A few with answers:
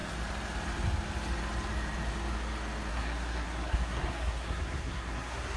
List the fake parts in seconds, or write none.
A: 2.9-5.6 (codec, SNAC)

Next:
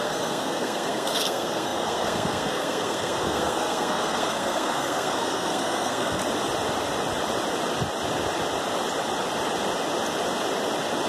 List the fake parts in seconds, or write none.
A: 0.0-6.2 (codec, SNAC)

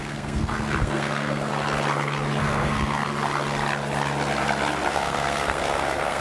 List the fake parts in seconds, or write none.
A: 0.0-1.5 (codec, SNAC); 2.4-3.0; 4.9-6.2

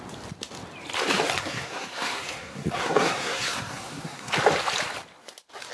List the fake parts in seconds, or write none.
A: 1.4-4.3 (codec, SNAC)

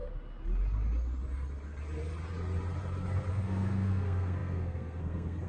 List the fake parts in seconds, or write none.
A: 3.3-5.5 (codec, SNAC)

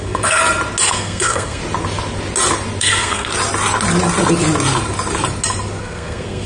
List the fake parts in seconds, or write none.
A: 0.0-0.4 (codec, SNAC); 0.9-1.6; 2.8-3.3; 5.8-6.5

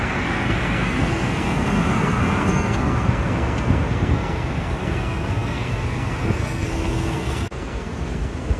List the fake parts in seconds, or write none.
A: 0.0-8.6 (codec, SNAC)